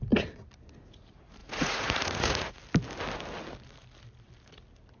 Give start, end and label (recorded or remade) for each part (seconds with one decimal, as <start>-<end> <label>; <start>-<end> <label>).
0.0-1.4 recorded; 1.4-2.6 remade; 2.6-5.0 recorded